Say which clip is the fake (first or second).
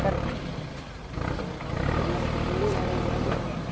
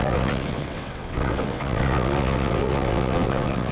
second